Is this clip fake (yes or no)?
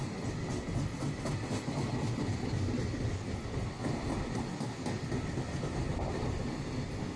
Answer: no